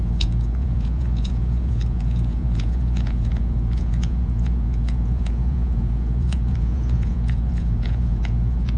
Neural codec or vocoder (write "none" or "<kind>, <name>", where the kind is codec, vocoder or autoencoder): vocoder, Vocos